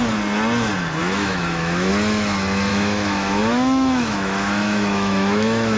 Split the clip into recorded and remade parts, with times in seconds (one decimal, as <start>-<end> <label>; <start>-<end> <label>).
0.0-1.0 recorded; 1.0-1.9 remade; 1.9-2.7 recorded; 2.7-5.8 remade